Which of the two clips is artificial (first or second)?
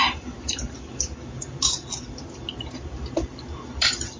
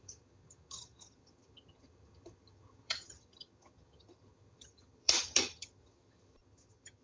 second